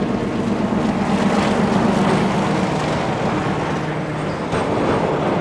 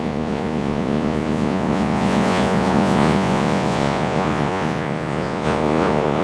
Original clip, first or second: first